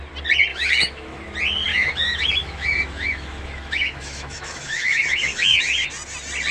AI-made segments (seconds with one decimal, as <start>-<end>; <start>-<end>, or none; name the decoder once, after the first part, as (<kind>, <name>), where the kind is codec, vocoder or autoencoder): 0.5-1.2 (autoencoder, DAC-VAE); 1.7-5.6